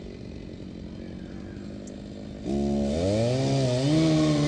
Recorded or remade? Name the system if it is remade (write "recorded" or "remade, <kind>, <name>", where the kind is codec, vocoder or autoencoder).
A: recorded